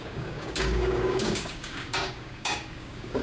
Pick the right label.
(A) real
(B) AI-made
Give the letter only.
B